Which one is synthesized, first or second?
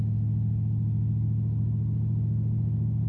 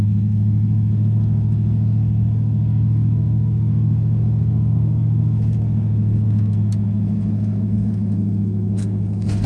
second